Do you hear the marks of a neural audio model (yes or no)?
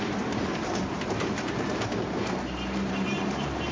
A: yes